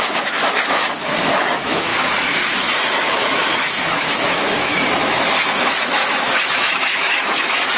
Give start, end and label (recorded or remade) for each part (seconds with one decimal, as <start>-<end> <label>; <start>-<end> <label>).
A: 0.0-7.8 remade